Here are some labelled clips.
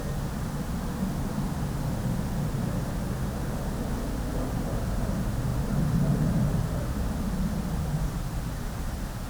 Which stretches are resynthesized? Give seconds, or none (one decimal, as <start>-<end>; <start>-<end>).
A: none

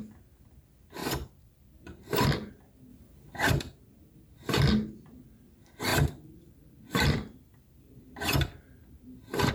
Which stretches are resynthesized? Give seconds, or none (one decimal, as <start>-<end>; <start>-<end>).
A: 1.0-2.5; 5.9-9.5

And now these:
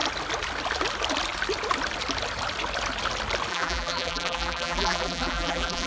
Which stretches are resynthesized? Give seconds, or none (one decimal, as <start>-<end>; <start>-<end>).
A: 3.5-5.9

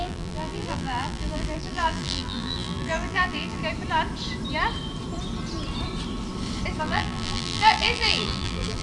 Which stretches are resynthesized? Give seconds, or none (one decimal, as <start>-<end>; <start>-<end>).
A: 0.0-3.6; 6.8-8.8